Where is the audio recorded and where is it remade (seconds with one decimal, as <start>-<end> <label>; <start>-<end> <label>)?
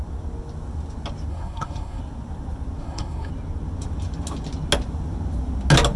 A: 0.0-1.3 recorded; 1.3-2.0 remade; 2.0-2.8 recorded; 2.8-3.3 remade; 3.3-6.0 recorded